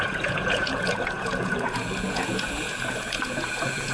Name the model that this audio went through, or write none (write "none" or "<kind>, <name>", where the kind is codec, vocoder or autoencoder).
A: vocoder, Vocos